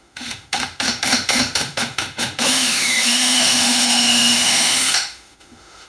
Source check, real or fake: fake